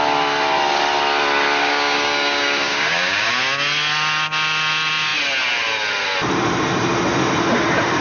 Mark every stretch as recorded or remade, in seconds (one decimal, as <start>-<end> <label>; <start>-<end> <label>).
0.0-1.6 recorded; 1.6-3.3 remade; 3.3-8.0 recorded